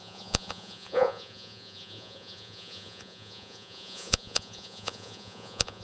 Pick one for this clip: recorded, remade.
remade